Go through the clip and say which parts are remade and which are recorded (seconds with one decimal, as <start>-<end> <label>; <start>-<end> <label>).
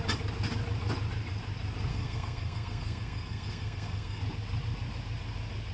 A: 0.0-1.9 recorded; 1.9-4.2 remade; 4.2-5.7 recorded